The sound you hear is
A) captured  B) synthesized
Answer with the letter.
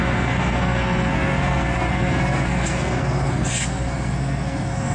B